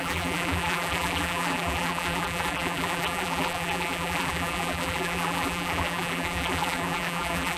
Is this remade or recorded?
remade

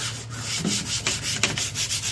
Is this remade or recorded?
recorded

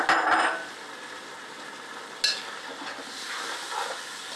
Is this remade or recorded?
recorded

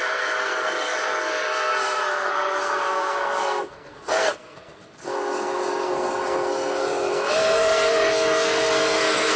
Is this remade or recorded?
remade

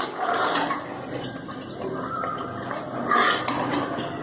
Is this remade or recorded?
recorded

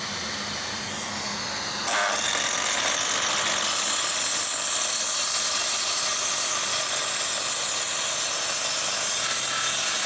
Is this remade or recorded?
recorded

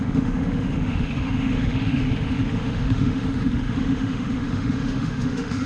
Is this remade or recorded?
remade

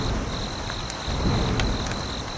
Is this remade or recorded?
recorded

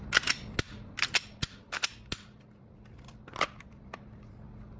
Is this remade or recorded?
recorded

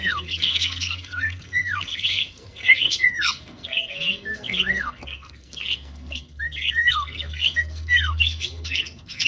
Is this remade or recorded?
remade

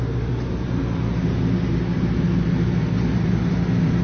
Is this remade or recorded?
recorded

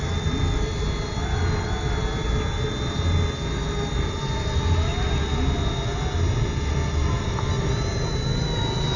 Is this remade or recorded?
recorded